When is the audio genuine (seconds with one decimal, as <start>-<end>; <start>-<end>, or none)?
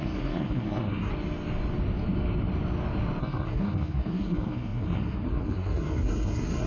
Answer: 1.1-3.2